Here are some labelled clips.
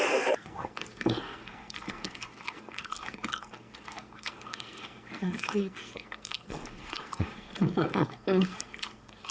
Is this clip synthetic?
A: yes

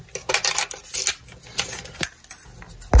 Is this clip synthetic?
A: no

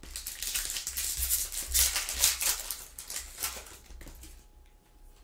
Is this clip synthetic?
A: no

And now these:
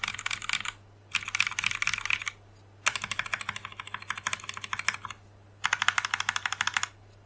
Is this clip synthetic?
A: no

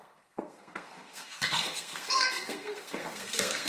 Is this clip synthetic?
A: yes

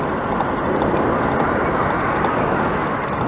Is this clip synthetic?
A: no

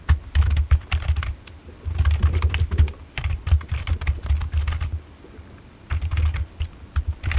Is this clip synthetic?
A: no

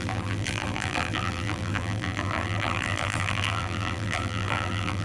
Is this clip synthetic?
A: yes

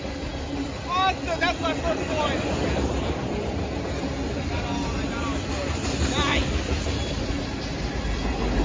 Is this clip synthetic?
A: no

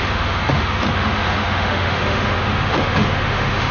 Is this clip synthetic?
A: yes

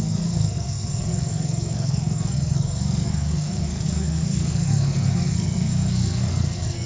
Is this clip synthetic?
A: yes